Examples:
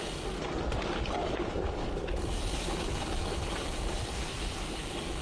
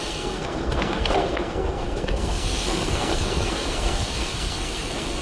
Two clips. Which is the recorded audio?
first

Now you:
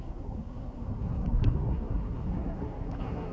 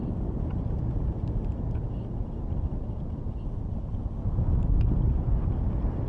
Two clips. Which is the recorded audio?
second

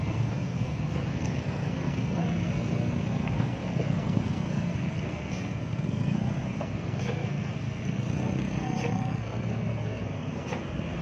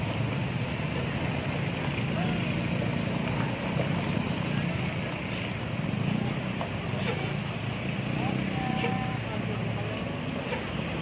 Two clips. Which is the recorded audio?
second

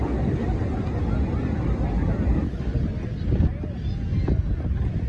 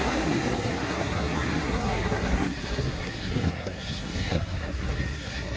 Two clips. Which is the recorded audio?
first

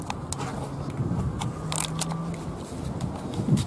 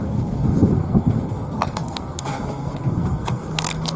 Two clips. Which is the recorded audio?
first